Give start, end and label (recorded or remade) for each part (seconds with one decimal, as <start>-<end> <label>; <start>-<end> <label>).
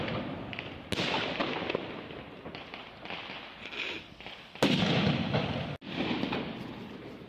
0.0-7.3 recorded